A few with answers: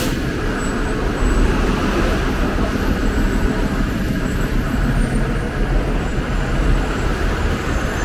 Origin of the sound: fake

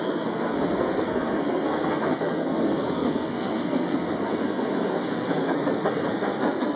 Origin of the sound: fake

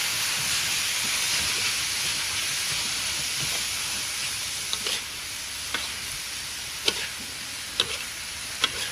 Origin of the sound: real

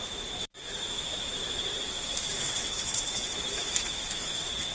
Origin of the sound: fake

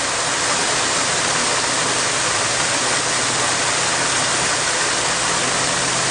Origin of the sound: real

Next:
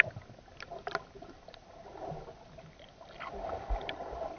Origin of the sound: real